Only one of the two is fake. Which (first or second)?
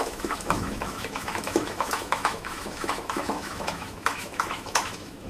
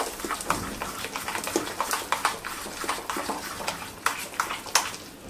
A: first